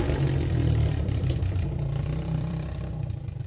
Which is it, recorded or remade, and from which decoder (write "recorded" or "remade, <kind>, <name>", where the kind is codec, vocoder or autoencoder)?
remade, vocoder, BigVGAN v2